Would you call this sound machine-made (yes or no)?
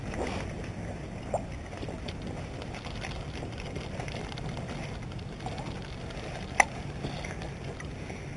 no